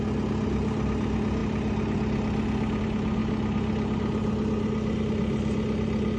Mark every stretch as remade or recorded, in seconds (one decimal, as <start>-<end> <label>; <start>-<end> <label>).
0.0-6.2 recorded